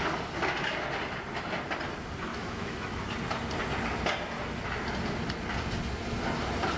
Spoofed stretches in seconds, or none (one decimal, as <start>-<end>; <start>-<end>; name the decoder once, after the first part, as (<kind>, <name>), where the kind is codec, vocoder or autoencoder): 2.3-3.1 (autoencoder, DAC-VAE)